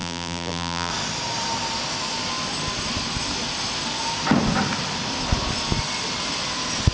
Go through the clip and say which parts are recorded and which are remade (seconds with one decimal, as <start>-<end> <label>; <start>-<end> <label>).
0.0-0.9 remade; 0.9-6.9 recorded